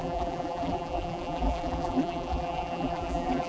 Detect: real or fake fake